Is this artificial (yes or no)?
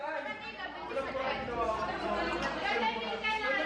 yes